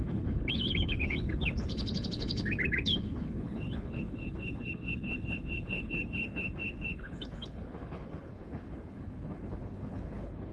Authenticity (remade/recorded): remade